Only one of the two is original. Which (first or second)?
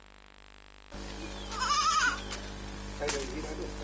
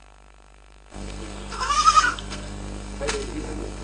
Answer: first